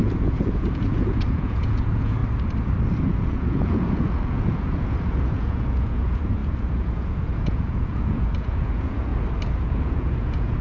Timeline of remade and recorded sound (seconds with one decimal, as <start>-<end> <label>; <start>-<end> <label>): 0.0-2.2 remade; 2.2-3.0 recorded; 3.0-9.1 remade; 9.1-9.6 recorded; 9.6-10.6 remade